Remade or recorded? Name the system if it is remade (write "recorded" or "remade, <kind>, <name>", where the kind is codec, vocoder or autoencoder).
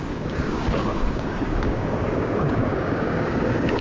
remade, codec, DAC